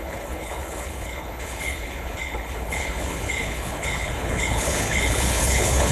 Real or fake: fake